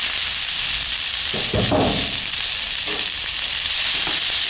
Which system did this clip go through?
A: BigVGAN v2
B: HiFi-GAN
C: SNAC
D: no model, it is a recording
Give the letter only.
A